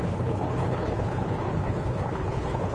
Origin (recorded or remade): remade